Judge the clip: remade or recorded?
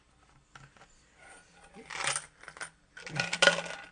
recorded